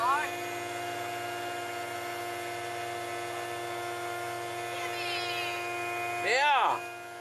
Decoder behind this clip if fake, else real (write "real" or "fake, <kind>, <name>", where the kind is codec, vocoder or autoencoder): real